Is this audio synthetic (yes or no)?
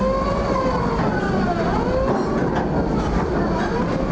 no